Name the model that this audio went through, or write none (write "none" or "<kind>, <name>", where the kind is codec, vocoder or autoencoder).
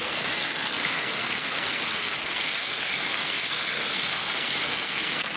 codec, SNAC